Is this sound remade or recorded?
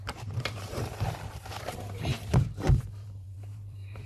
remade